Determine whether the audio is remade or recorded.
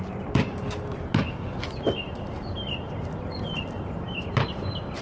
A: recorded